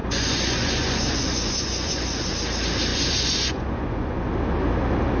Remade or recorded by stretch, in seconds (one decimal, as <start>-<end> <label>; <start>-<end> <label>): 0.0-2.3 remade; 2.3-2.9 recorded; 2.9-4.3 remade; 4.3-5.2 recorded